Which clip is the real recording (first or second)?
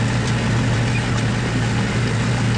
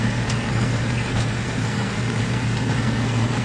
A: first